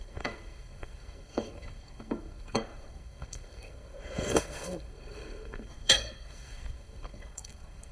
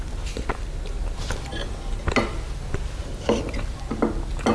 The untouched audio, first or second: second